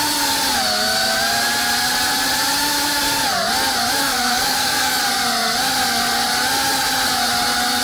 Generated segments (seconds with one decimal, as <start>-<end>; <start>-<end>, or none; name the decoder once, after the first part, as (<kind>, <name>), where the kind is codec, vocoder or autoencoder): 4.0-5.0 (codec, SNAC)